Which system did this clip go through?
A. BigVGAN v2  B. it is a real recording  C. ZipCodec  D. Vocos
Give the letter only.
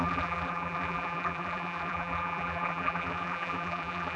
A